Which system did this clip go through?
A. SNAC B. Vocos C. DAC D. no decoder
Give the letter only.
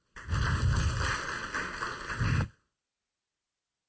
D